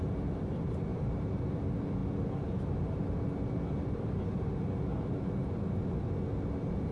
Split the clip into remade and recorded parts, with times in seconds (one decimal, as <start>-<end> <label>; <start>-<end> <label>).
0.0-0.9 recorded; 0.9-1.4 remade; 1.4-4.9 recorded; 4.9-5.5 remade; 5.5-6.9 recorded